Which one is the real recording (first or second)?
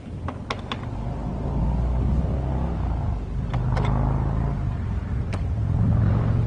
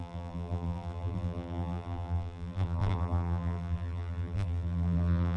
first